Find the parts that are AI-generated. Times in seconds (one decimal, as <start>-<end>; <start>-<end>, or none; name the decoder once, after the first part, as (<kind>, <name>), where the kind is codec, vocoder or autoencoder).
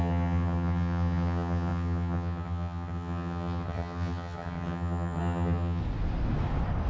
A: 0.0-5.8 (vocoder, HiFi-GAN)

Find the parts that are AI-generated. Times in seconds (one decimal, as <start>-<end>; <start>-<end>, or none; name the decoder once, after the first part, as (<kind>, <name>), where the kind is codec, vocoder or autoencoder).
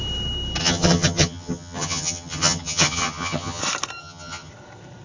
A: 0.6-3.6 (vocoder, HiFi-GAN); 4.0-4.5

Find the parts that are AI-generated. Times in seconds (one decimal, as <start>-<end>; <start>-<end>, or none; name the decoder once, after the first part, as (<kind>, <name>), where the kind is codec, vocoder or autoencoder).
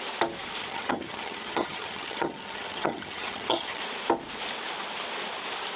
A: 0.6-3.8 (vocoder, HiFi-GAN)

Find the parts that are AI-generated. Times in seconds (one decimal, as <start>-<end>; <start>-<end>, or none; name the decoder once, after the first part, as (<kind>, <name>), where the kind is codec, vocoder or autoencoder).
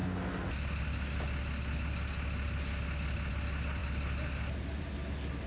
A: none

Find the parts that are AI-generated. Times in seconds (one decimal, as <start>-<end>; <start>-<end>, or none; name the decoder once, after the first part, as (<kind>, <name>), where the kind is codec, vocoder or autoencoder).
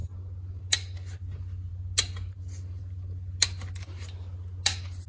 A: none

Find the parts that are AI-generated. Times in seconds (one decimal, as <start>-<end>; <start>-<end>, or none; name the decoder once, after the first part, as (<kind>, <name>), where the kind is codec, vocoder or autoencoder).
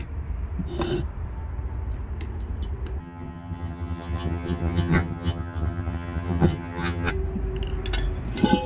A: 3.0-7.1 (vocoder, HiFi-GAN)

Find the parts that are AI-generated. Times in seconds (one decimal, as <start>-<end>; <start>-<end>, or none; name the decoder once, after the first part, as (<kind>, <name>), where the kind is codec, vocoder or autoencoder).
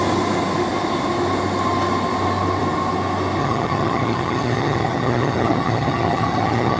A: 3.4-6.8 (vocoder, HiFi-GAN)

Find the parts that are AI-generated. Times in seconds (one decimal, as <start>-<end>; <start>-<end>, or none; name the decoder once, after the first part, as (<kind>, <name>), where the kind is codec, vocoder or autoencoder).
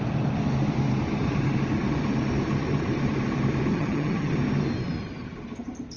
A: 3.7-4.3 (vocoder, HiFi-GAN)